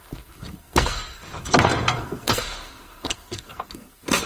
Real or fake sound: fake